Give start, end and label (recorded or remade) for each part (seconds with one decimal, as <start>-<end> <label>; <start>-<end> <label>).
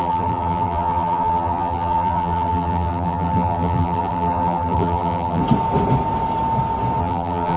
0.0-5.4 remade; 5.4-7.0 recorded; 7.0-7.6 remade